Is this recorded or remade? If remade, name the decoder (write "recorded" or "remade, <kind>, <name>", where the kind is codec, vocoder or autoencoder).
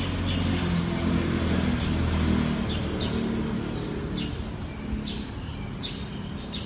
recorded